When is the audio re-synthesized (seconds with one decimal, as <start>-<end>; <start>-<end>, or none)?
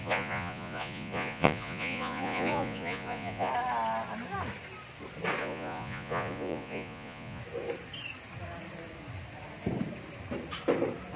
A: 0.0-3.5; 5.4-7.4